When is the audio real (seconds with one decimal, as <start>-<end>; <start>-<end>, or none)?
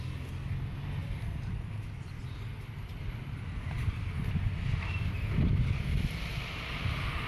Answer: 0.0-1.0; 2.0-2.5